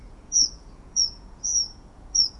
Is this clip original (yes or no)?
no